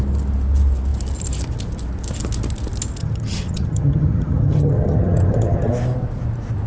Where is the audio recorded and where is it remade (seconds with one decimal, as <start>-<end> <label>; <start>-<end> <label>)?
0.0-3.0 recorded; 3.0-5.7 remade; 5.7-6.7 recorded